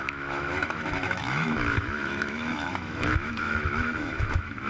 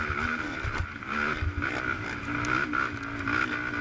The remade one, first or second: first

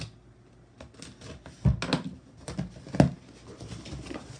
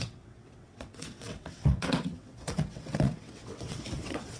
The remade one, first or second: second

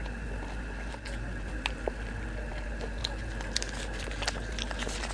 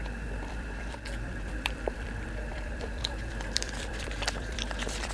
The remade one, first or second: second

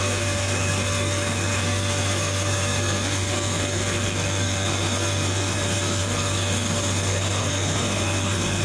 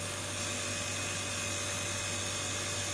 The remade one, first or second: first